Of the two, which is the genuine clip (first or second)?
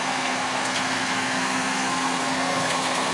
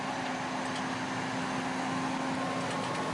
second